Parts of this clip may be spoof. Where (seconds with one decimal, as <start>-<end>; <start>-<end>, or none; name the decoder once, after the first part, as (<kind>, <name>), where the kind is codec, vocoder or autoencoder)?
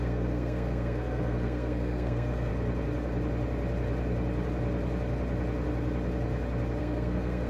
0.0-2.5 (codec, SNAC); 6.8-7.5